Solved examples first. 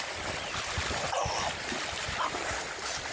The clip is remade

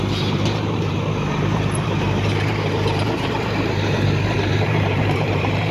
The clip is remade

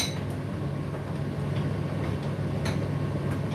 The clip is recorded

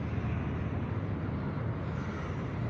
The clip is recorded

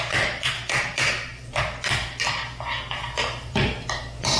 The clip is recorded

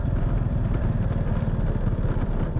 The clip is recorded